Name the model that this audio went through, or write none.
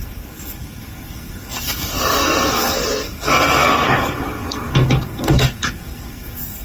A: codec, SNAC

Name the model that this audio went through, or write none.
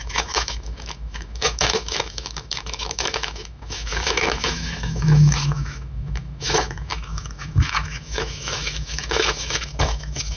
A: autoencoder, DAC-VAE